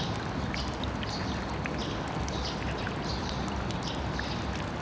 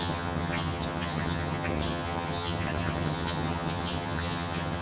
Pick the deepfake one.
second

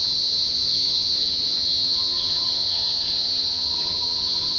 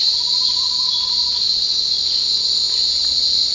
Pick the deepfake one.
first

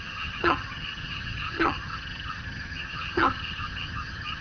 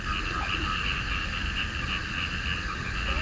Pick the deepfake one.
first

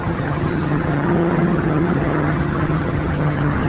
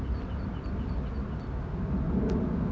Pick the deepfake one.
first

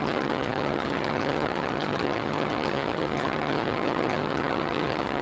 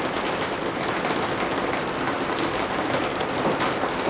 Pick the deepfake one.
first